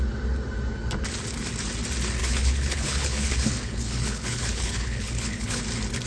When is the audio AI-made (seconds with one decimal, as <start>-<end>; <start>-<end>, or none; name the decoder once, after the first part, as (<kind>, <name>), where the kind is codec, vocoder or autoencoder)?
2.2-5.6 (codec, HILCodec)